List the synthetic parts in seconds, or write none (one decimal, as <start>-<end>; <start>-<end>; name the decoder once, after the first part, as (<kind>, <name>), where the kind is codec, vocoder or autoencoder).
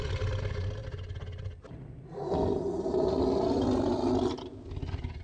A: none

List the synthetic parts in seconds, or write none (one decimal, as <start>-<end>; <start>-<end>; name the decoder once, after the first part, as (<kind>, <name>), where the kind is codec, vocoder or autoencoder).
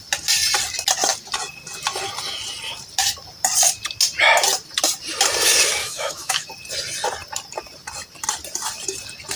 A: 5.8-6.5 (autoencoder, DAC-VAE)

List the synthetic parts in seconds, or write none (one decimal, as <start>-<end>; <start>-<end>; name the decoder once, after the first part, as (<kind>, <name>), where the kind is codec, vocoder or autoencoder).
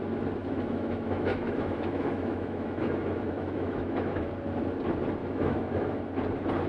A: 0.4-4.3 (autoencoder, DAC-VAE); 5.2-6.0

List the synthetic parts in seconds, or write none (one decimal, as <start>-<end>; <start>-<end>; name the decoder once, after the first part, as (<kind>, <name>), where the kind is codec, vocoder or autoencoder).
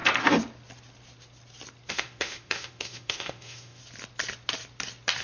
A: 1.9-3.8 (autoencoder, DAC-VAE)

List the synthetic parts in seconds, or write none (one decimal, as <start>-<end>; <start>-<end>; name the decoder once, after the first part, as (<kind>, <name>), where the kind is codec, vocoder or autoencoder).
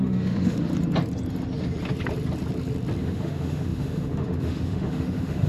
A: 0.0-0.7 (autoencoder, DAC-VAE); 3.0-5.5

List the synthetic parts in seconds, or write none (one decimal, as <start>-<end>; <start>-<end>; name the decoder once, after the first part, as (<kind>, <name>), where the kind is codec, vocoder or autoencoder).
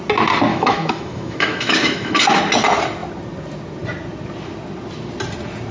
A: 0.5-2.4 (autoencoder, DAC-VAE)